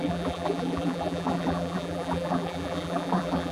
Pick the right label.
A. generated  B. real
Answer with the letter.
A